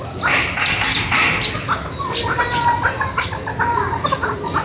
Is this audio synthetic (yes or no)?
no